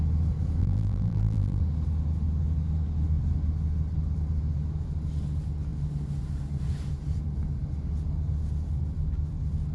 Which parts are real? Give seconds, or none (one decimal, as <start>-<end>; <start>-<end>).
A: 0.0-0.6; 1.6-9.7